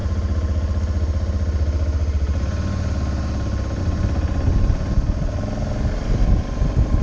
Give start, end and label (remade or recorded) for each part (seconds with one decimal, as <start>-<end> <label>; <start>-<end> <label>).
0.0-7.0 recorded